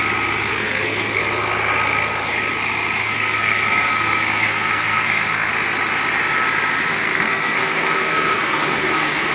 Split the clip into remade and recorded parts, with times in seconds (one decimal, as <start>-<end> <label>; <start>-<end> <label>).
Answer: 0.0-0.5 recorded; 0.5-1.2 remade; 1.2-3.0 recorded; 3.0-5.5 remade; 5.5-6.9 recorded; 6.9-9.3 remade